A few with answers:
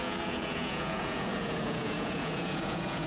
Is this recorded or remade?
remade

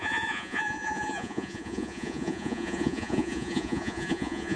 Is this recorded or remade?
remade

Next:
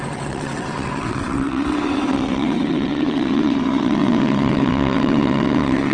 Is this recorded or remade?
remade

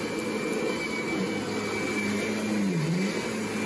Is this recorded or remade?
recorded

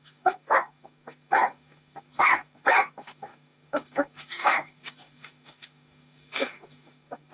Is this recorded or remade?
remade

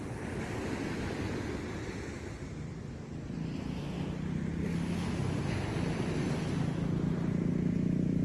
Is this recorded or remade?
recorded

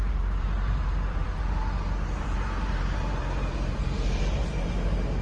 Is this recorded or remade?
remade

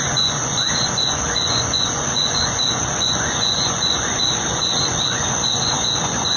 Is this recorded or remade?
remade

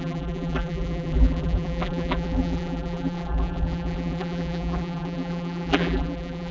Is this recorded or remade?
remade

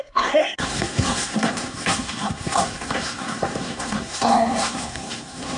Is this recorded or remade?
remade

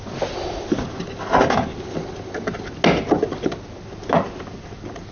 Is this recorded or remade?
recorded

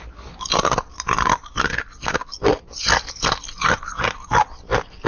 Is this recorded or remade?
recorded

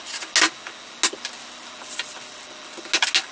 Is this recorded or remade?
recorded